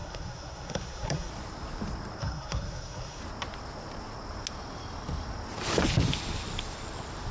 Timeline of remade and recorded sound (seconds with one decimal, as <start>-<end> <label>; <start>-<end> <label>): 0.0-1.3 remade; 1.3-2.2 recorded; 2.2-3.2 remade; 3.2-7.3 recorded